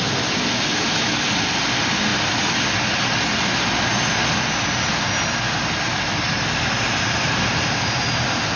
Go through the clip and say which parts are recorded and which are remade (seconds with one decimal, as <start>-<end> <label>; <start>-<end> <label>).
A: 0.0-8.6 recorded